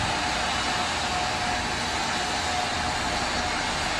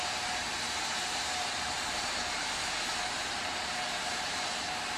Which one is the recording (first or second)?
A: first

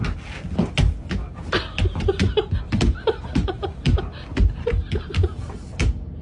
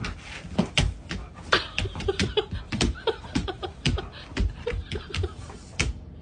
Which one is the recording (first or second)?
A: first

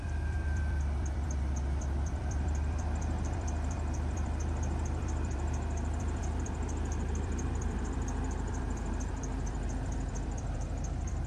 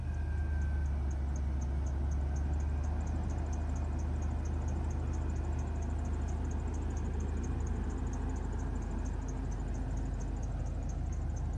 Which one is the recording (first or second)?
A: second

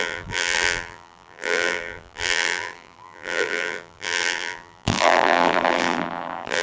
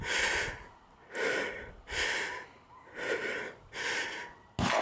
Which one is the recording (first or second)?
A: second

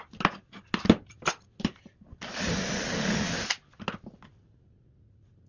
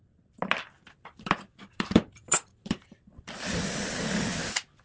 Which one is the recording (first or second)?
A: first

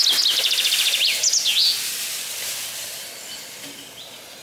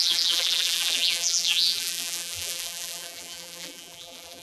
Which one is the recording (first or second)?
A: first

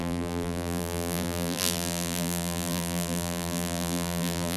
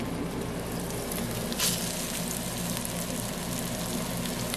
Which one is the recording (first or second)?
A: second